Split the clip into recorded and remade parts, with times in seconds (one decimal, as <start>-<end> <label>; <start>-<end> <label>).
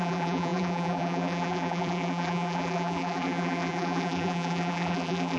0.0-5.4 remade